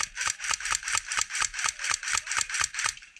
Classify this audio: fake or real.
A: real